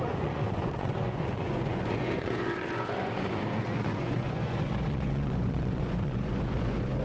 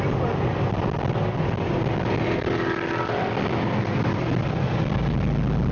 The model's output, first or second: first